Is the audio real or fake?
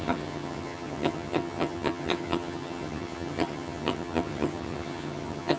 fake